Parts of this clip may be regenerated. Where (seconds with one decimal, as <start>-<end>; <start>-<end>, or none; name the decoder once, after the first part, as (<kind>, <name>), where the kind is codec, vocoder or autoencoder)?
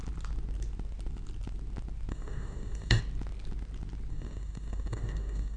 2.1-3.0 (codec, DAC); 4.1-5.6